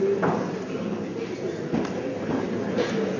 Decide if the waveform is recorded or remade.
recorded